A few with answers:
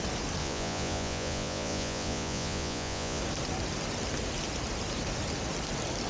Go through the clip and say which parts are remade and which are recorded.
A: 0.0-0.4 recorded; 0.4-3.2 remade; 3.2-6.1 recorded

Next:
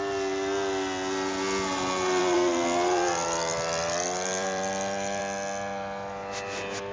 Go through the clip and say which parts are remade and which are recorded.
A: 0.0-2.2 recorded; 2.2-5.2 remade; 5.2-6.9 recorded

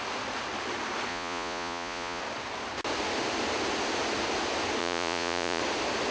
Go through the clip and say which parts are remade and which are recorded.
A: 0.0-1.1 recorded; 1.1-2.2 remade; 2.2-4.8 recorded; 4.8-5.6 remade; 5.6-6.1 recorded

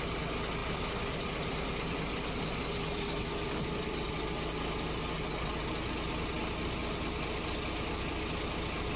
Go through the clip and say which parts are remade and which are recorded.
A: 0.0-0.6 recorded; 0.6-2.6 remade; 2.6-9.0 recorded

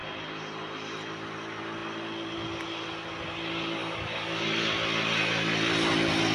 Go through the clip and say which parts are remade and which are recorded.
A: 0.0-3.8 recorded; 3.8-4.4 remade; 4.4-6.3 recorded

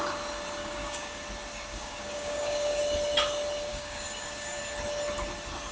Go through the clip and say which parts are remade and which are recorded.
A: 0.0-0.6 recorded; 0.6-1.2 remade; 1.2-1.7 recorded; 1.7-2.8 remade; 2.8-3.7 recorded; 3.7-4.6 remade; 4.6-5.7 recorded